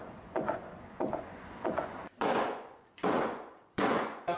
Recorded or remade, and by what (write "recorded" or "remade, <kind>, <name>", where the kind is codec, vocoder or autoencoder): remade, vocoder, Vocos